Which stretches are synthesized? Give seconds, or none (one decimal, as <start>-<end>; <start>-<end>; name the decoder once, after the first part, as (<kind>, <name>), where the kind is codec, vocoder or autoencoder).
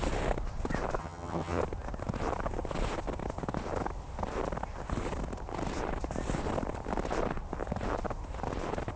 1.0-1.6 (vocoder, HiFi-GAN)